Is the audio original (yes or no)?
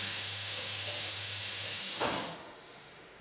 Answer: no